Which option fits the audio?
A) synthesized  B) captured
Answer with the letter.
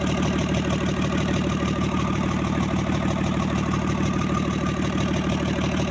B